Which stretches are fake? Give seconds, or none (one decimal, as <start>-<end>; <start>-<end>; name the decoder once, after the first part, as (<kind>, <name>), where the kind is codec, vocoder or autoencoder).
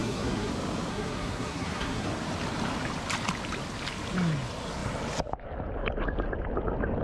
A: 0.0-0.5 (codec, SNAC); 0.9-2.1